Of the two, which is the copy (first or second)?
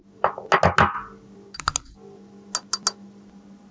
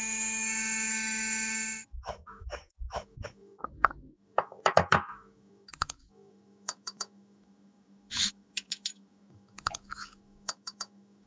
second